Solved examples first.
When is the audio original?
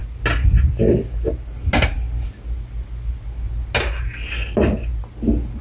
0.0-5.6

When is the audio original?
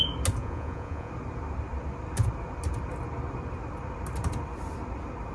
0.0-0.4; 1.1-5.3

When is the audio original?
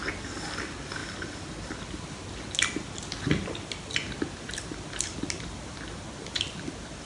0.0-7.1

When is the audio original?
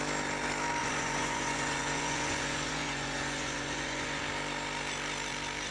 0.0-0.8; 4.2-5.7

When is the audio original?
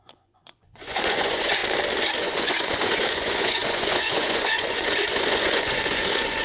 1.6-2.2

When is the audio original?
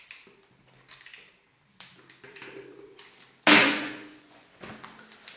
0.0-3.6; 4.7-5.4